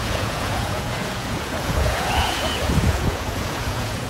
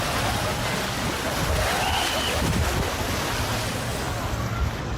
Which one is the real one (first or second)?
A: second